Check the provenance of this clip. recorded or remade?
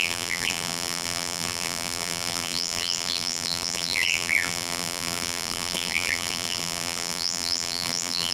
remade